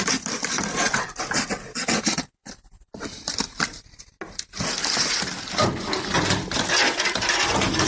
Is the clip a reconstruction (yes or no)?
no